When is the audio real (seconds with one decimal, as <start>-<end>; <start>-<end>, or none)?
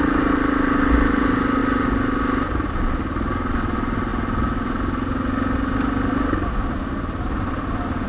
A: 0.0-8.1